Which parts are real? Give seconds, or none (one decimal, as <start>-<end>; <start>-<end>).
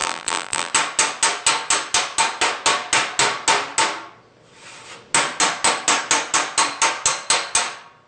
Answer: 0.7-8.1